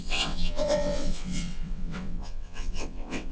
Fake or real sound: fake